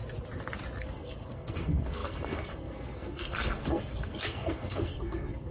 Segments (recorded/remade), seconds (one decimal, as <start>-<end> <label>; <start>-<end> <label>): 0.0-0.9 recorded; 0.9-5.5 remade